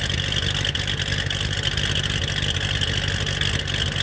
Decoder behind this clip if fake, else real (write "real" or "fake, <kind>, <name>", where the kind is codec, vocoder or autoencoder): real